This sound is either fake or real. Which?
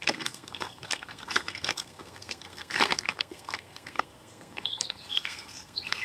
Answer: fake